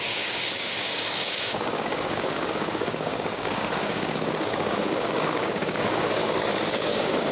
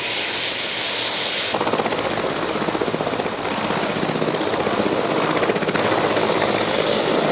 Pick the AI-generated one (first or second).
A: first